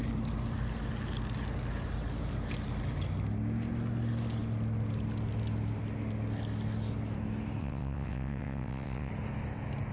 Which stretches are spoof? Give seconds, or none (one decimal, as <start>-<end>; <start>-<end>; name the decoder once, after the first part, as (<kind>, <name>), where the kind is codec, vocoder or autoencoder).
7.6-9.1 (vocoder, WaveNeXt)